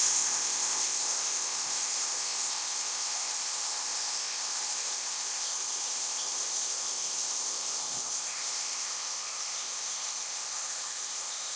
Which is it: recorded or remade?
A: remade